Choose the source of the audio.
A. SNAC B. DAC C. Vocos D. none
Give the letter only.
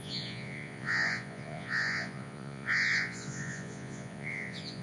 C